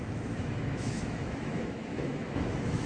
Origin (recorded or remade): remade